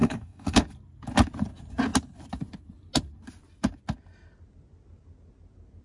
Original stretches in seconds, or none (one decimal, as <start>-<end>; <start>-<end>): 0.6-5.8